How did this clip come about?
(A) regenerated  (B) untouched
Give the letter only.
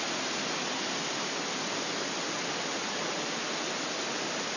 B